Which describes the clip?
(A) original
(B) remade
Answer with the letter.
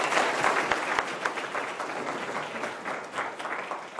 A